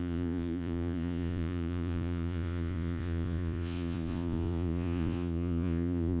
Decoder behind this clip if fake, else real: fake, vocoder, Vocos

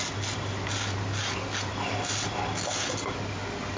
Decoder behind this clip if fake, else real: real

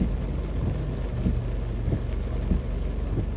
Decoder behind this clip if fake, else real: real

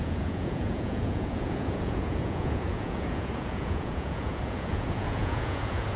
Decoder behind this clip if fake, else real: fake, vocoder, Vocos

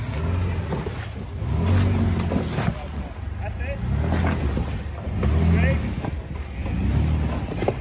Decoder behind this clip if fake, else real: real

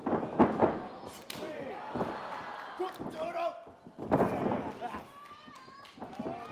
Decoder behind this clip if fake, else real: real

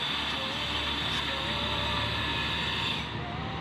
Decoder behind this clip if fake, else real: real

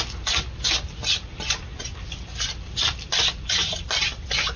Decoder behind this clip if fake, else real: real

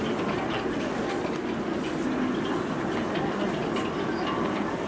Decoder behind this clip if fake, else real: real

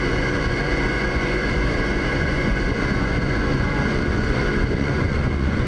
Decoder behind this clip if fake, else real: fake, vocoder, Vocos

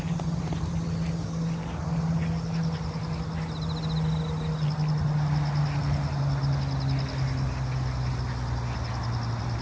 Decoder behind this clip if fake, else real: real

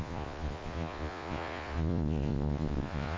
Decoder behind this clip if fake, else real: fake, vocoder, Vocos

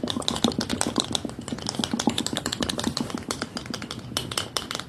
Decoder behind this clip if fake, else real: real